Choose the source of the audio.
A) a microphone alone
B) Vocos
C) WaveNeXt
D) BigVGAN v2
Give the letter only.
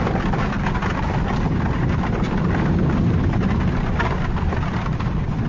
A